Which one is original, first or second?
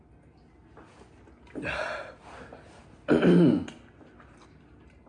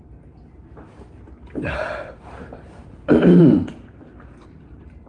first